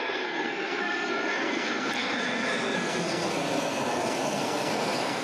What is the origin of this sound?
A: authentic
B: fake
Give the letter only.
B